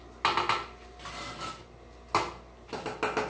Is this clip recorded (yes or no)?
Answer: yes